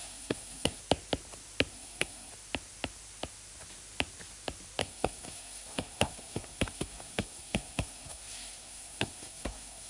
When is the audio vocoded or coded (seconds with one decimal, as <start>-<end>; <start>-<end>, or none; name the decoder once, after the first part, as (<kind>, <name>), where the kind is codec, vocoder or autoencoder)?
0.0-0.8 (codec, SNAC); 1.7-2.3; 4.8-9.9